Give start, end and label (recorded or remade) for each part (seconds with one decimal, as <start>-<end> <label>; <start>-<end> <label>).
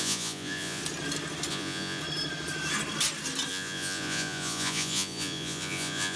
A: 0.0-0.8 remade; 0.8-1.5 recorded; 1.5-2.0 remade; 2.0-3.5 recorded; 3.5-6.2 remade